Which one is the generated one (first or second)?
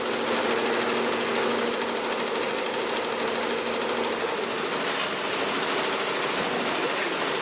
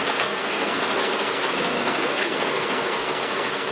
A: second